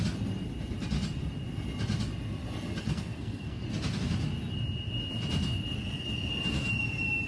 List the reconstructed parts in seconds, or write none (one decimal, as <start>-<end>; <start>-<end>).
2.8-3.6